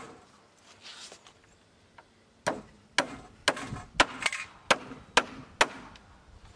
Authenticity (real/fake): real